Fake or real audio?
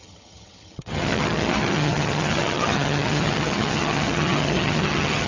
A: fake